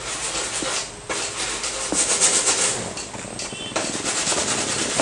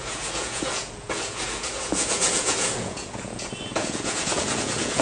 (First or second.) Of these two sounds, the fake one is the second